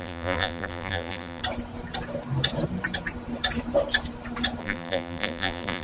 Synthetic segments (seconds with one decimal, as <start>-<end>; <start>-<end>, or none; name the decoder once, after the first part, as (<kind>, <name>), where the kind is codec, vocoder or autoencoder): 0.0-1.4 (vocoder, BigVGAN v2); 4.6-5.8

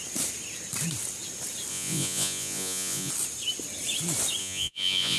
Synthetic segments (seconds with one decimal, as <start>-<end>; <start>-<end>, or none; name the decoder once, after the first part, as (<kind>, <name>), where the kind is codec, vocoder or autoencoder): 1.7-3.1 (vocoder, Vocos); 4.4-5.2